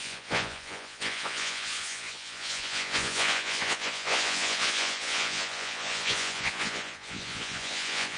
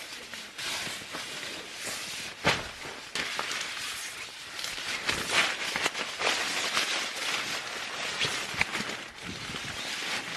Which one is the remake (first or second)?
first